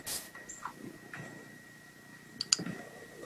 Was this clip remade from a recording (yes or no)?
no